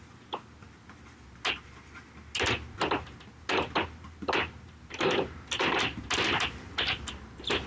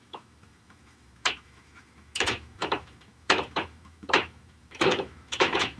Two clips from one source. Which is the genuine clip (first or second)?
first